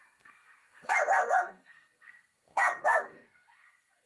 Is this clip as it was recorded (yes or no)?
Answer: no